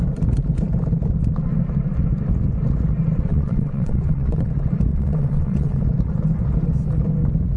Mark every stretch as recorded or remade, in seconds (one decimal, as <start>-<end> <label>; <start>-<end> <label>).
0.0-3.3 recorded; 3.3-4.5 remade; 4.5-4.9 recorded; 4.9-5.8 remade; 5.8-7.6 recorded